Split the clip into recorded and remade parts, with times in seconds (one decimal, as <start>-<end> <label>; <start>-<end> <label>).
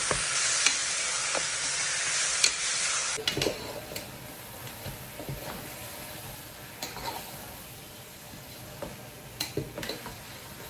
0.0-10.7 recorded